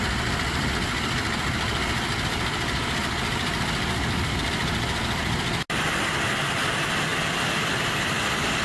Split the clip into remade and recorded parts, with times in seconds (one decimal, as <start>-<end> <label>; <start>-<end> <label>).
0.0-8.6 recorded